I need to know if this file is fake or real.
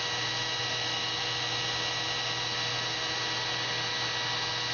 real